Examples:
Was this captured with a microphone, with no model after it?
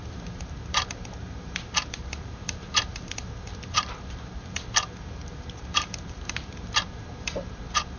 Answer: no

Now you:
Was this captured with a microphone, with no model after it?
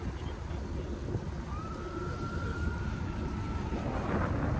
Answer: yes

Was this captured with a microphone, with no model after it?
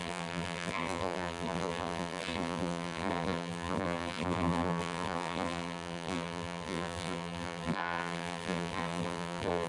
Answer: no